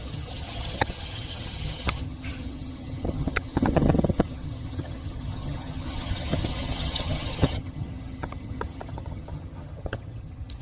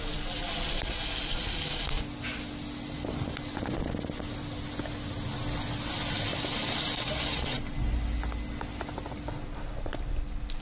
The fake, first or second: first